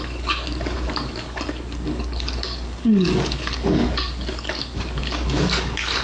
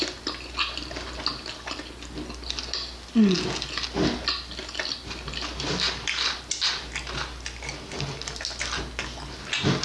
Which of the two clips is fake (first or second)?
first